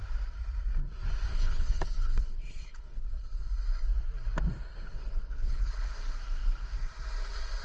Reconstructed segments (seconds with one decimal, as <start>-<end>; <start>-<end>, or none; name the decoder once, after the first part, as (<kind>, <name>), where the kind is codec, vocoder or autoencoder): 1.3-3.4 (codec, HILCodec); 5.1-5.7